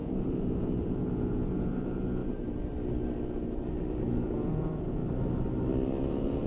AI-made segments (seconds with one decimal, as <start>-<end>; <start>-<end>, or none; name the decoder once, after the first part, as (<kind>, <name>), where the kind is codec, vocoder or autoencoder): 0.0-2.2 (vocoder, Vocos); 4.0-5.0; 6.1-6.5